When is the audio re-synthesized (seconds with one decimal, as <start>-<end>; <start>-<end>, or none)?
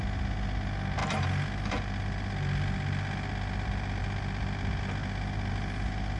none